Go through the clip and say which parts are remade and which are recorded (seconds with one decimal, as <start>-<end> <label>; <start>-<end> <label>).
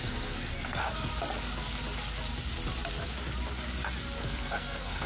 0.0-1.1 remade; 1.1-4.2 recorded; 4.2-5.1 remade